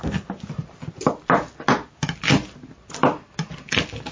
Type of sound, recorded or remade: recorded